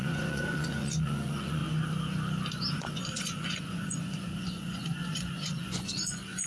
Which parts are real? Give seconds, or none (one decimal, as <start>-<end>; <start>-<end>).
1.6-2.7